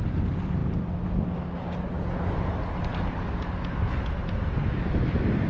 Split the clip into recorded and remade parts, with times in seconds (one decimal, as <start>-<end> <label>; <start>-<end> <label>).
0.0-5.5 recorded